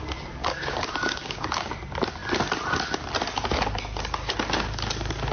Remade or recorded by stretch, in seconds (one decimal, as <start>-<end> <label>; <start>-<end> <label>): 0.0-0.4 recorded; 0.4-1.7 remade; 1.7-5.3 recorded